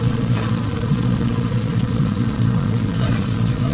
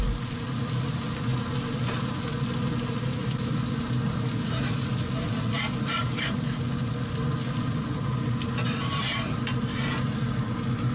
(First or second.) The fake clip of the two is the first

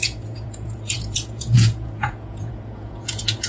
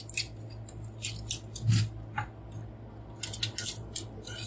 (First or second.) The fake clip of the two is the first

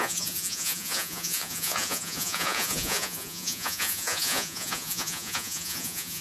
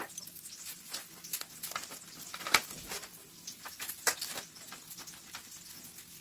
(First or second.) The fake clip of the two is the first